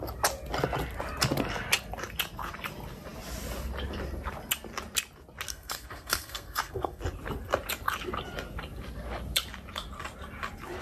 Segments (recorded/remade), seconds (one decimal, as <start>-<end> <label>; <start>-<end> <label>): 0.0-5.5 recorded; 5.5-7.0 remade; 7.0-10.8 recorded